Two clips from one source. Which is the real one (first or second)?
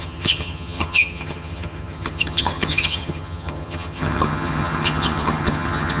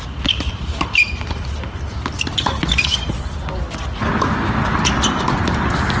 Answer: second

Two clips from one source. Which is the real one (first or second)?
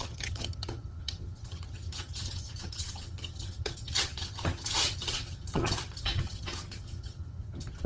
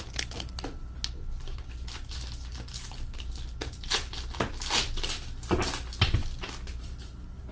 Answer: second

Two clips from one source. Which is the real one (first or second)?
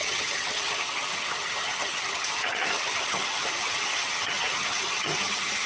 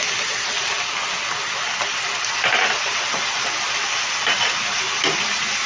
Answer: second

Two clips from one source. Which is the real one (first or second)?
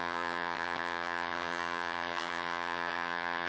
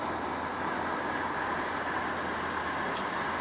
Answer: second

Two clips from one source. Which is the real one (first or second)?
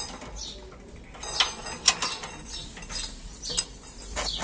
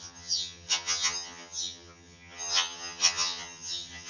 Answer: first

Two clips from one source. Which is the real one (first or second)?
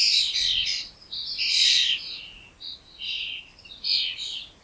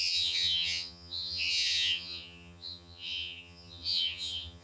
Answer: first